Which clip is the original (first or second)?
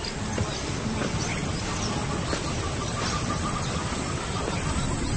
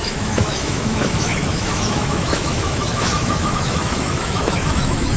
first